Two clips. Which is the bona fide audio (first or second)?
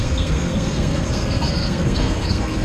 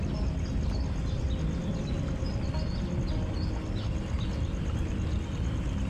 second